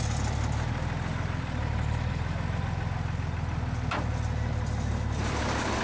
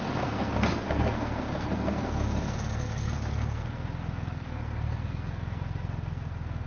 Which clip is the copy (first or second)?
second